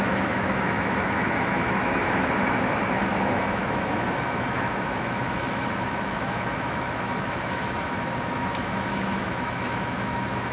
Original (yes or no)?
no